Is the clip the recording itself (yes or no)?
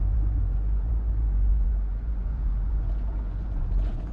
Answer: no